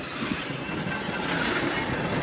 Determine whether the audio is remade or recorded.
recorded